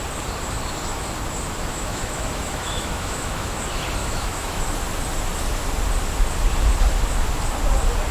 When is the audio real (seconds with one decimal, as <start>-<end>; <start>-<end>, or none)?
0.0-1.7; 3.6-4.0; 4.6-8.1